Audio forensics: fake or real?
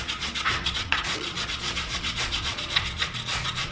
fake